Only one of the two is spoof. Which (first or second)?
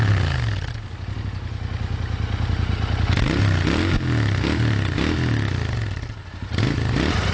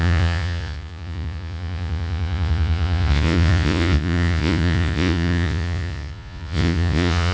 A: second